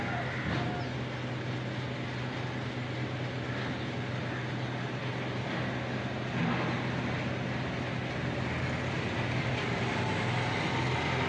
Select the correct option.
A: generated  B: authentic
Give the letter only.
B